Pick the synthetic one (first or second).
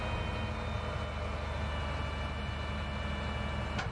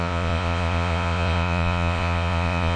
second